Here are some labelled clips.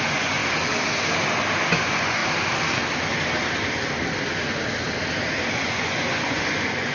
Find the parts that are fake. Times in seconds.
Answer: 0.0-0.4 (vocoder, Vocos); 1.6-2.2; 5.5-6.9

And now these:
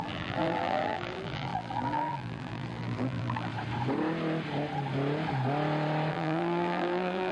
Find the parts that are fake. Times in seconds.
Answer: 0.0-3.5 (vocoder, BigVGAN v2); 6.1-7.3

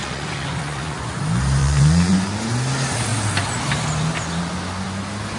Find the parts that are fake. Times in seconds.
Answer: 0.0-1.2 (vocoder, Vocos); 1.6-2.3

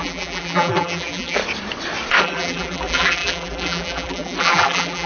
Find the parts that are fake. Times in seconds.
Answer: 0.0-1.4 (vocoder, BigVGAN v2); 2.2-5.1

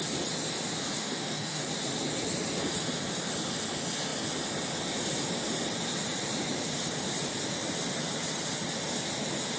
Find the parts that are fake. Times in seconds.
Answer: 1.0-1.6 (autoencoder, DAC-VAE)

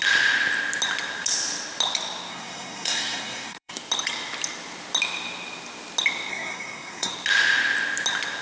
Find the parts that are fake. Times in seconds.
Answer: 2.3-3.7 (codec, SNAC); 6.3-7.1

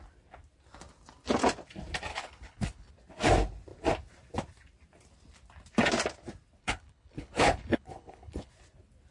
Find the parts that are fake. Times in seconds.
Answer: 2.1-2.9 (codec, HILCodec); 6.6-8.5

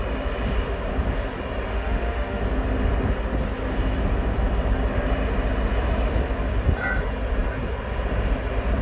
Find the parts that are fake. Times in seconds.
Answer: 1.7-2.4 (autoencoder, DAC-VAE)